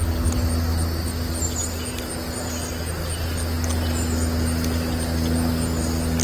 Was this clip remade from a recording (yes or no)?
no